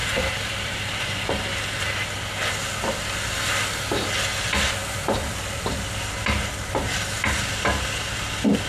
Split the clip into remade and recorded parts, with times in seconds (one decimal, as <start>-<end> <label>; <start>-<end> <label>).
0.0-1.0 remade; 1.0-4.8 recorded; 4.8-6.0 remade; 6.0-8.7 recorded